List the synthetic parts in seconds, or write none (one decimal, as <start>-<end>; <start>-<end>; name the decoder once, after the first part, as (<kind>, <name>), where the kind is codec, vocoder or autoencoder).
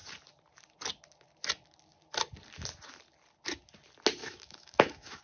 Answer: 4.2-5.2 (autoencoder, DAC-VAE)